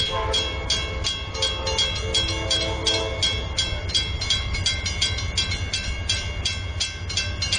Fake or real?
real